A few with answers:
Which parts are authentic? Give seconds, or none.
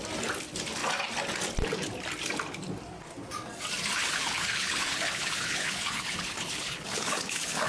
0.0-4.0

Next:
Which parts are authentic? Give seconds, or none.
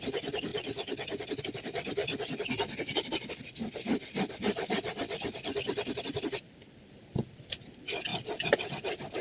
0.0-9.2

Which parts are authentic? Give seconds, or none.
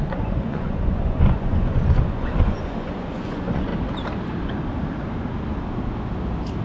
3.7-6.6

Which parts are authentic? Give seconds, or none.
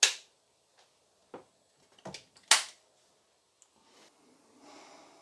0.0-5.2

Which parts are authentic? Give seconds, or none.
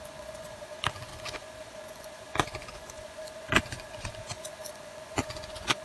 none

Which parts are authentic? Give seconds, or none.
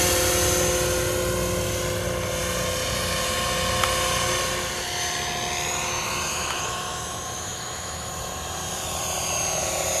0.0-6.3; 8.1-10.0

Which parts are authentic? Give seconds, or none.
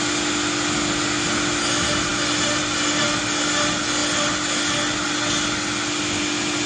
0.0-6.7